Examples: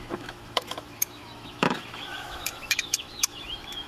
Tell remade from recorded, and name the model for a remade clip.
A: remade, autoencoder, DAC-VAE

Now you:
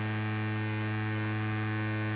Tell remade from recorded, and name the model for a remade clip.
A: recorded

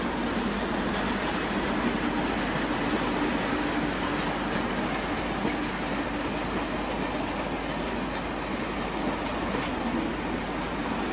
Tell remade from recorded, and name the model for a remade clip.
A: recorded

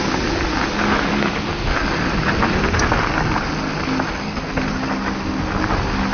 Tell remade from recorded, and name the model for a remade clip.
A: recorded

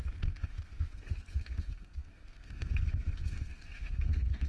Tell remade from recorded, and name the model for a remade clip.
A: remade, codec, SNAC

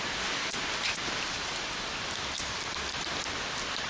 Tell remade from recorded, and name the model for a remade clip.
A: recorded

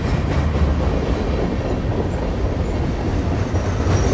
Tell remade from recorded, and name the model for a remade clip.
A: recorded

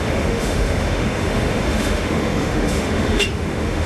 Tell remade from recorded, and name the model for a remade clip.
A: remade, autoencoder, DAC-VAE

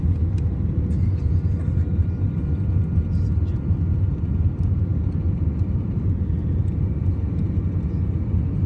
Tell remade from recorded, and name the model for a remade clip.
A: recorded